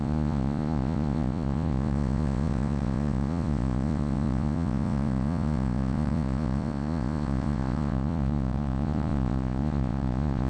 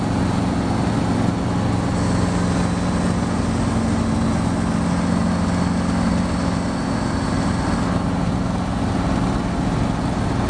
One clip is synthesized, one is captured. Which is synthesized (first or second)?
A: first